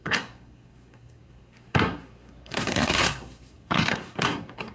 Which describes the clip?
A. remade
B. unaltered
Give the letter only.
A